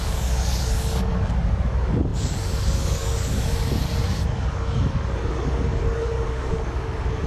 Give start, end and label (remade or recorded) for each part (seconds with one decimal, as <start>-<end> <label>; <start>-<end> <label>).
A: 0.0-7.3 remade